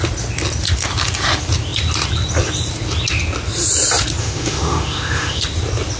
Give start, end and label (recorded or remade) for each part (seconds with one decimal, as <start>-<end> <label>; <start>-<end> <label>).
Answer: 0.0-4.2 recorded; 4.2-5.4 remade; 5.4-6.0 recorded